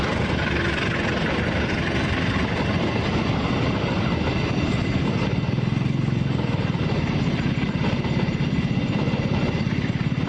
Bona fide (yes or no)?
yes